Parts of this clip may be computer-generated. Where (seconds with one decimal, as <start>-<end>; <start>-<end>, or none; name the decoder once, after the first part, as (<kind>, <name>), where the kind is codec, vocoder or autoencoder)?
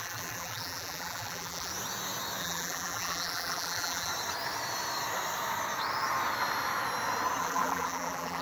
0.0-1.7 (vocoder, BigVGAN v2); 2.4-4.1; 7.4-8.4